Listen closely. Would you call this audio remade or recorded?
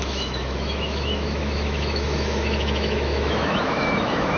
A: remade